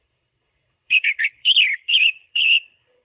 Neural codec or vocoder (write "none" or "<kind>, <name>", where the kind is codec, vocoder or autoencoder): codec, HILCodec